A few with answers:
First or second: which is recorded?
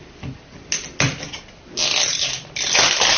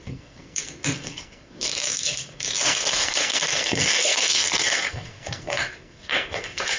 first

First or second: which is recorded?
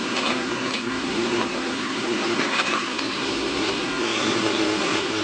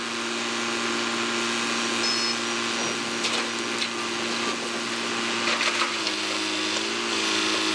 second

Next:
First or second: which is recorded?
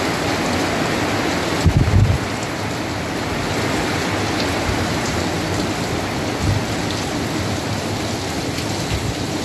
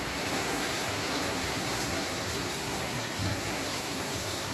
first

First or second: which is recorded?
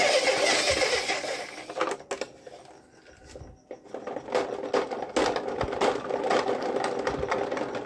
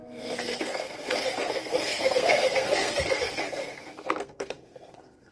first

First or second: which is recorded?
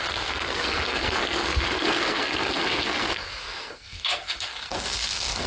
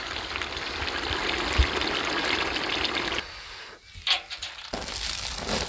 second